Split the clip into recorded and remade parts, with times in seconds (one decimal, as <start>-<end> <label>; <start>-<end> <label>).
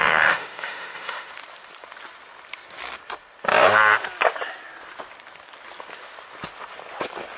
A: 0.0-1.3 remade; 1.3-7.4 recorded